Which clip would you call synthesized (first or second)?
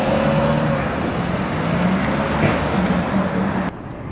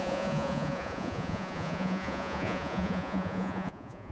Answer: second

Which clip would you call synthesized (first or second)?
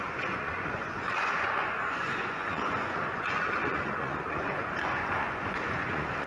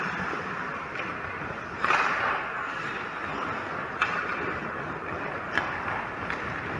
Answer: first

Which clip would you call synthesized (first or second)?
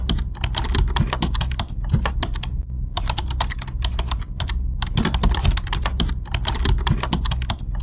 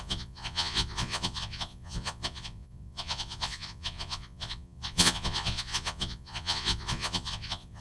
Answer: second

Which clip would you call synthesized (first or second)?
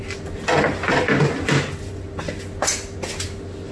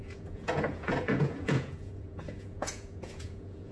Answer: second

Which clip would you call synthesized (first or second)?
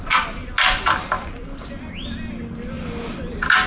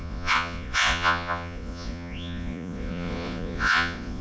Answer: second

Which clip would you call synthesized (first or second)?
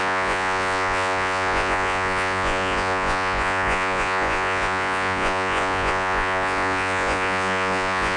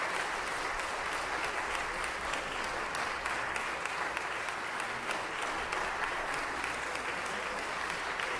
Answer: first